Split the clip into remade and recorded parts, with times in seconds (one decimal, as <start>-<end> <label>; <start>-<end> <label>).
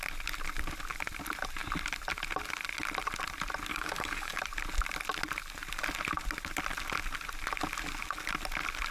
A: 0.0-3.7 recorded; 3.7-4.4 remade; 4.4-8.9 recorded